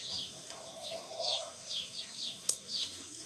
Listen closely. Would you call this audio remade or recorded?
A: remade